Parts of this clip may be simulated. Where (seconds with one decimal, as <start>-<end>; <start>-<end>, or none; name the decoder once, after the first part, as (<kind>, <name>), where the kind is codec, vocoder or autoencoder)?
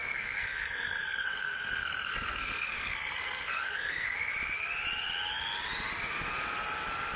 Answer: 0.0-4.3 (codec, SNAC)